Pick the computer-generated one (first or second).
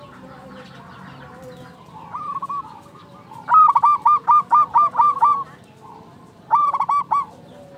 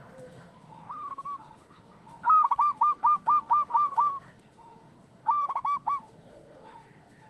second